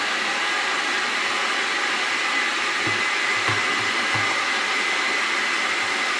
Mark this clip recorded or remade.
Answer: recorded